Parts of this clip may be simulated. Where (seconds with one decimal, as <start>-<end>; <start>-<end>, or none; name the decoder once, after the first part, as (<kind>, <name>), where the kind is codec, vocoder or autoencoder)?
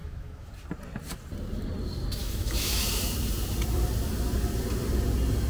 0.0-0.5 (autoencoder, DAC-VAE); 2.2-2.8